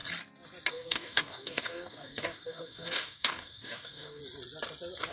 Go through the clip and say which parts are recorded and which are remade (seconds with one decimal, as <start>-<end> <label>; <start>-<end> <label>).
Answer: 0.0-0.7 recorded; 0.7-4.2 remade; 4.2-5.1 recorded